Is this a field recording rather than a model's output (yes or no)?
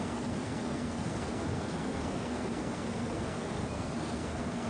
no